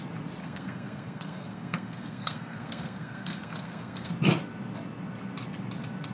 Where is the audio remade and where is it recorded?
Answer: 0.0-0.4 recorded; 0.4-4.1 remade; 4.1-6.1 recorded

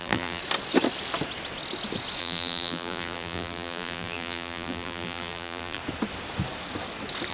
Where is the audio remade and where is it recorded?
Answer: 0.0-0.4 remade; 0.4-2.2 recorded; 2.2-5.8 remade; 5.8-7.3 recorded

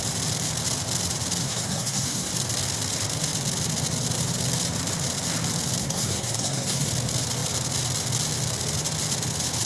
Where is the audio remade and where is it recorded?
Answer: 0.0-1.4 recorded; 1.4-2.3 remade; 2.3-5.8 recorded; 5.8-6.9 remade; 6.9-9.7 recorded